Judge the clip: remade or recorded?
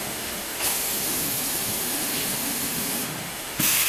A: remade